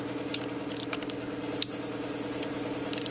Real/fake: real